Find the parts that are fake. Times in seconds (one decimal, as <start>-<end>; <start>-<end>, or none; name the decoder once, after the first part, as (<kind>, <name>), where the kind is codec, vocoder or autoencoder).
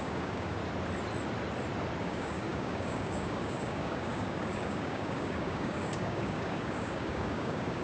0.0-0.6 (codec, DAC); 2.0-7.8